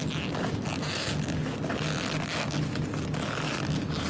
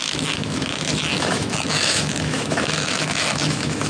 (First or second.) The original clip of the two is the first